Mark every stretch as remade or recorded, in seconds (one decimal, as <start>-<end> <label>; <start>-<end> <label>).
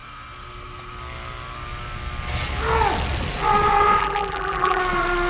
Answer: 0.0-4.0 recorded; 4.0-4.8 remade; 4.8-5.3 recorded